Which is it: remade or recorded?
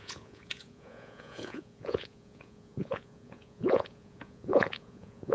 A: remade